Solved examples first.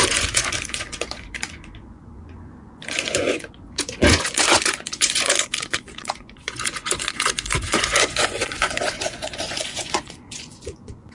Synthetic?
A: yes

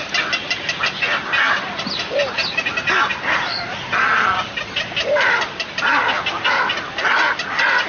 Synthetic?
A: no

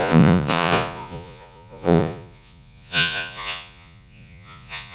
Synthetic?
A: yes